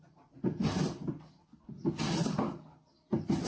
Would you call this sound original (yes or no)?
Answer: yes